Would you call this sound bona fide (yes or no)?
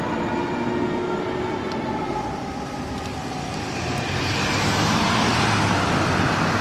yes